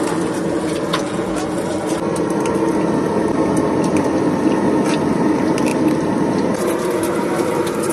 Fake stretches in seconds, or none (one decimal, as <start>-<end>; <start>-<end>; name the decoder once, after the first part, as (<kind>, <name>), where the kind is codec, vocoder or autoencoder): 0.9-1.4 (vocoder, Vocos)